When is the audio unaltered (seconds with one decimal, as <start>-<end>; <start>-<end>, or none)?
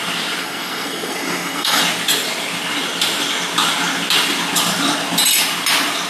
0.0-0.4; 1.8-6.1